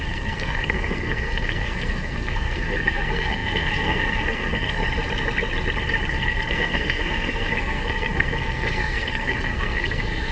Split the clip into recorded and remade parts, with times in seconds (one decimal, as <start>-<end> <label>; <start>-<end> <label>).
0.0-4.8 remade; 4.8-6.1 recorded; 6.1-10.3 remade